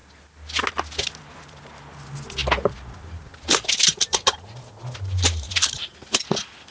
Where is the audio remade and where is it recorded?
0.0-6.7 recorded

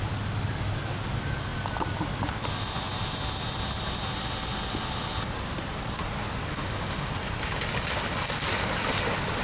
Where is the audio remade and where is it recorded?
0.0-6.5 recorded; 6.5-7.1 remade; 7.1-9.4 recorded

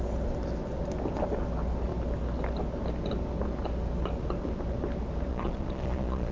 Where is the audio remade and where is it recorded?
0.0-5.3 recorded; 5.3-6.3 remade

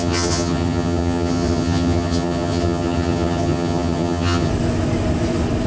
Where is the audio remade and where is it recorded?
0.0-4.5 remade; 4.5-5.7 recorded

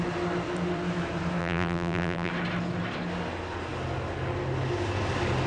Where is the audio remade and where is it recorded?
0.0-1.4 recorded; 1.4-2.3 remade; 2.3-5.5 recorded

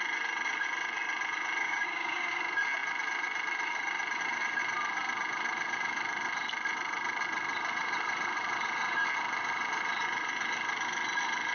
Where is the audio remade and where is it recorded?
0.0-1.6 recorded; 1.6-2.4 remade; 2.4-11.5 recorded

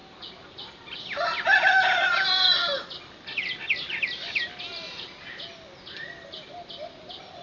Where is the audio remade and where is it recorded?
0.0-7.4 recorded